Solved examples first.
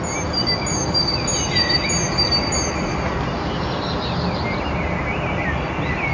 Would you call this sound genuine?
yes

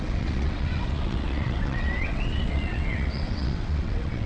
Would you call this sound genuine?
no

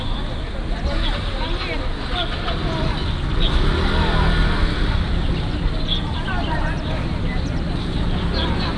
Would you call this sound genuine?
yes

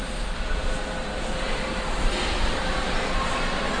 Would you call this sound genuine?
yes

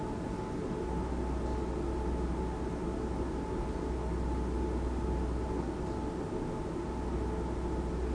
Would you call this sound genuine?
yes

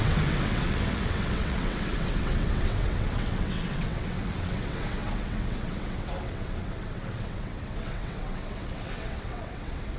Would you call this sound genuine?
no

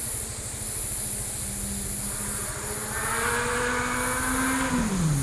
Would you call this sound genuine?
yes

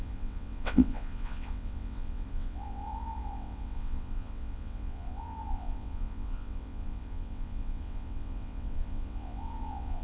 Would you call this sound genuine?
no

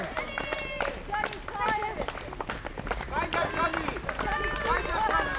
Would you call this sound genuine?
yes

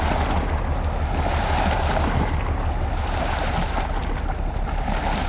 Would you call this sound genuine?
yes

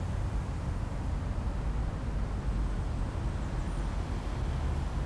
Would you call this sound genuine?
yes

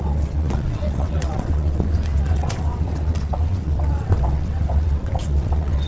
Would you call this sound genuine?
no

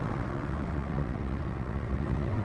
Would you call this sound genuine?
no